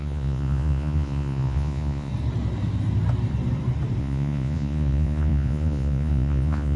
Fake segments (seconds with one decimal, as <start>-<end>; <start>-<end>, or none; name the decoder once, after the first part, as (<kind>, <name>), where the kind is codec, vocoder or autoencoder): 0.0-2.1 (vocoder, Vocos); 4.0-6.8